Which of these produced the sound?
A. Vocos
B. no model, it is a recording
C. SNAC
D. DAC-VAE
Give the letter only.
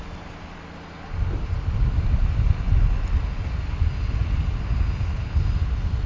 B